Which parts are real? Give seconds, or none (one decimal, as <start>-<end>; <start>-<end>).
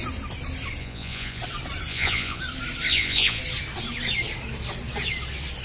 0.0-0.8; 1.4-1.9; 2.4-2.9; 3.4-5.6